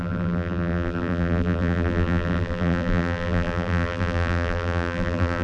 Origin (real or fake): fake